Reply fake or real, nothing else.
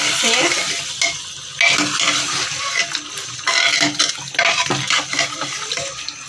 real